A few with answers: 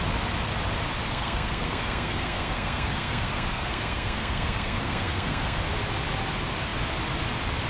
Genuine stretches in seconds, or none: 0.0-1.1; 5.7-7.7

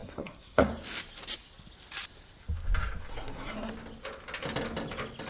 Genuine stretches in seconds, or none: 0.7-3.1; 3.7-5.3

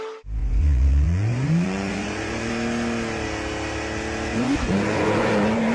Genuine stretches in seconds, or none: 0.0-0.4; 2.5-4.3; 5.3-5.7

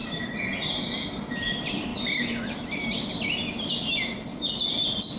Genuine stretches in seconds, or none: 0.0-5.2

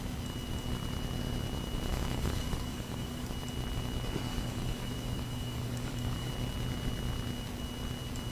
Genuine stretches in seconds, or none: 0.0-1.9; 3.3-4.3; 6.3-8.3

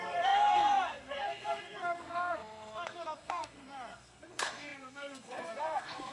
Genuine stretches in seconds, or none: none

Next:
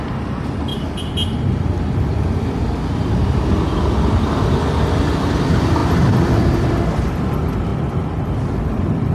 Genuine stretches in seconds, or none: 0.7-5.3; 7.7-8.3